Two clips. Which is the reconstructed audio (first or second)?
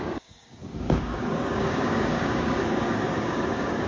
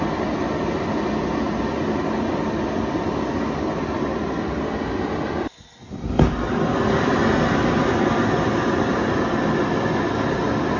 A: first